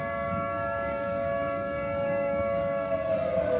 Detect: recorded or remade remade